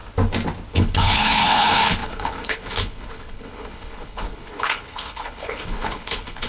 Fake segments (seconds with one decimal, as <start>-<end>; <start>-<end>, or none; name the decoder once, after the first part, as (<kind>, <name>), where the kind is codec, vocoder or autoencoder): 0.7-6.5 (codec, HILCodec)